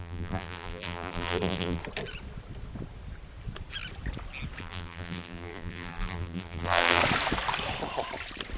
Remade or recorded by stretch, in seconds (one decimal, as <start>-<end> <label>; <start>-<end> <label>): 0.0-1.8 remade; 1.8-4.6 recorded; 4.6-7.0 remade; 7.0-8.6 recorded